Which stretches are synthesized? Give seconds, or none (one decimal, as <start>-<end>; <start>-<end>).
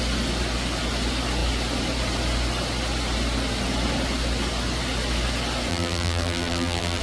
5.7-7.0